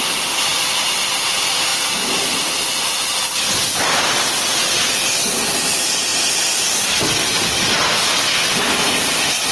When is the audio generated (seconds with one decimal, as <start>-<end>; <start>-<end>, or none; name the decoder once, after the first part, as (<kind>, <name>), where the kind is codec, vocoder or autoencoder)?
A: none